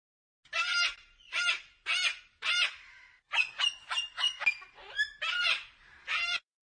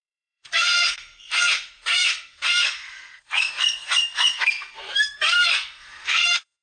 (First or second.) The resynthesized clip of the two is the second